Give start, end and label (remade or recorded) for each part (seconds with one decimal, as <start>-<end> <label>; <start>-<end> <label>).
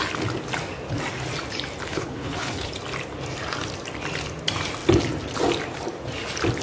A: 0.0-1.9 recorded; 1.9-2.7 remade; 2.7-6.6 recorded